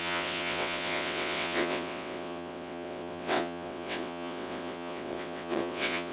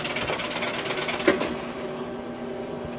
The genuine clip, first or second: second